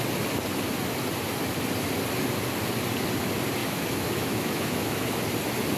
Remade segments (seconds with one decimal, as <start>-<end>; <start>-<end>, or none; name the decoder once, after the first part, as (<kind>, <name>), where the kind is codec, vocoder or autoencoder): 3.6-5.2 (autoencoder, DAC-VAE)